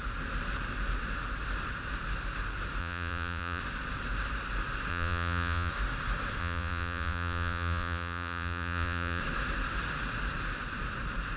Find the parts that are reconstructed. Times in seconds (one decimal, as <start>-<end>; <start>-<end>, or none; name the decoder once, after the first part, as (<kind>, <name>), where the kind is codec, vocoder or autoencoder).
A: 2.8-3.6 (vocoder, Vocos); 4.9-5.7; 6.4-9.2